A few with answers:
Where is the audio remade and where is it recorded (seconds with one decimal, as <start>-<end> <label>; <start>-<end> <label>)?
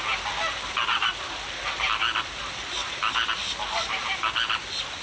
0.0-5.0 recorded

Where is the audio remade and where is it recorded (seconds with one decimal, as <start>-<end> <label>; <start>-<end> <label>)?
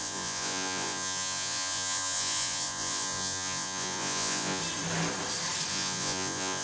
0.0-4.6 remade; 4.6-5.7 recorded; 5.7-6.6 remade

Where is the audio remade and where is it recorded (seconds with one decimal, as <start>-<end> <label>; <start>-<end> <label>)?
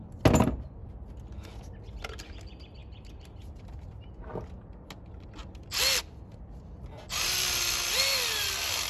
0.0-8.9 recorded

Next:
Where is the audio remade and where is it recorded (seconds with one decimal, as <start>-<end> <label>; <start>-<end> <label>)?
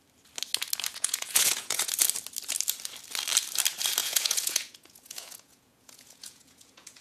0.0-0.9 recorded; 0.9-1.9 remade; 1.9-4.0 recorded; 4.0-7.0 remade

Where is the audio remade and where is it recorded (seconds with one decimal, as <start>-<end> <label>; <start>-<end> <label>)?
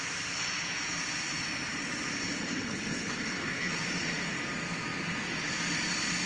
0.0-2.4 recorded; 2.4-3.7 remade; 3.7-6.3 recorded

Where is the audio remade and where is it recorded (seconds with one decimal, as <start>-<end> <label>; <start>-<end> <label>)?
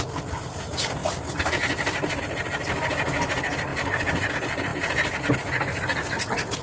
0.0-6.6 recorded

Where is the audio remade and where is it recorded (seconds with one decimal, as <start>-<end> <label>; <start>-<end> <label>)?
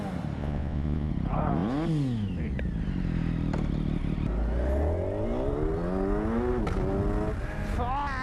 0.0-0.4 recorded; 0.4-1.1 remade; 1.1-8.2 recorded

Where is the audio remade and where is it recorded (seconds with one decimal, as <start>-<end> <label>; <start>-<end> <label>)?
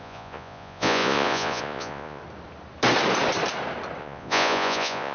0.0-2.2 remade; 2.2-4.0 recorded; 4.0-5.1 remade